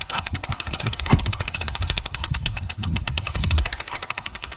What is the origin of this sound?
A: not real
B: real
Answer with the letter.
A